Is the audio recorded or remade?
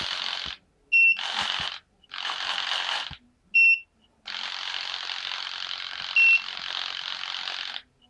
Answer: recorded